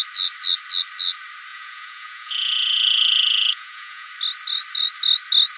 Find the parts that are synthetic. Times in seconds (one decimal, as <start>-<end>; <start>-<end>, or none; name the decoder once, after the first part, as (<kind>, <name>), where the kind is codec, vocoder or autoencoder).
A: 1.5-4.1 (vocoder, Vocos)